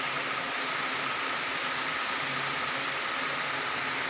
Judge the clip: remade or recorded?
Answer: recorded